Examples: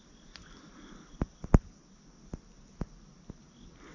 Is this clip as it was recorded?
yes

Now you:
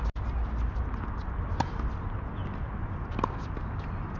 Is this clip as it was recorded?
yes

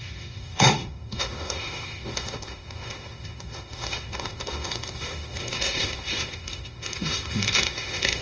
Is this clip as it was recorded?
no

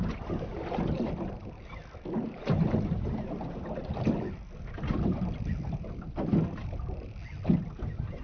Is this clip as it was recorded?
yes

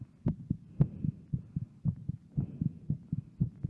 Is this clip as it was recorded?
yes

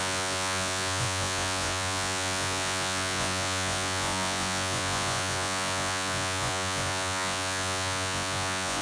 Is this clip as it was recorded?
no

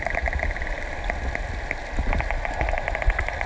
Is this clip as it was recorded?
yes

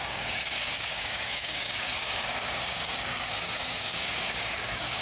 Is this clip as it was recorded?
no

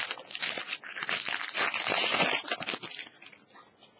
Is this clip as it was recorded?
yes